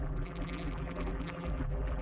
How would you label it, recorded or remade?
remade